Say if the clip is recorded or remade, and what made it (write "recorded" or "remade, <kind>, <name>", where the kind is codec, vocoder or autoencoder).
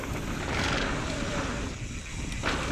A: recorded